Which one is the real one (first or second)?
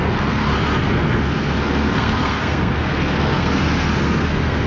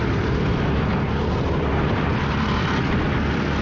second